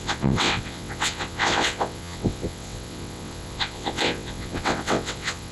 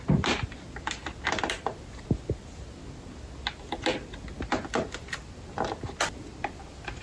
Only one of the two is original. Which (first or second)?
second